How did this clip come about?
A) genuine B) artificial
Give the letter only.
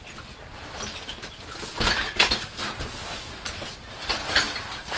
A